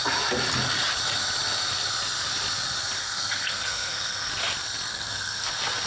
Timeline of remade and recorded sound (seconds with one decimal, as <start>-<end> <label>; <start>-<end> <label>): 0.0-3.0 recorded; 3.0-4.3 remade; 4.3-4.9 recorded; 4.9-5.5 remade; 5.5-5.9 recorded